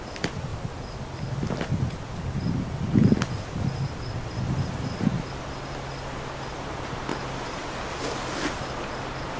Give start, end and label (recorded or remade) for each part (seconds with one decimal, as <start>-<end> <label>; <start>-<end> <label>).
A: 0.0-9.4 recorded